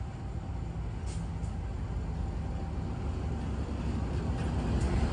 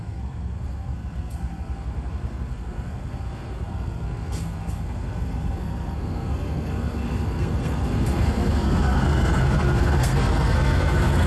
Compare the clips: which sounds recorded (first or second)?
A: first